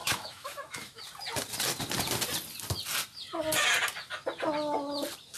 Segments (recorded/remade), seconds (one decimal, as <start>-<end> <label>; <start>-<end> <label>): 0.0-1.0 remade; 1.0-5.4 recorded